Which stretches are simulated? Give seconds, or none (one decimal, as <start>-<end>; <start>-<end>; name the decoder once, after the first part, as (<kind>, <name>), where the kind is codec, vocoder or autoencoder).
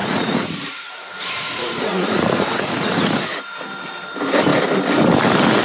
0.0-3.4 (vocoder, Vocos)